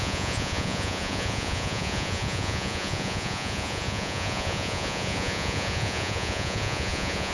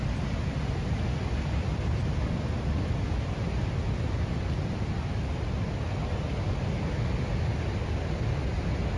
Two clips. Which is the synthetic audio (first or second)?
first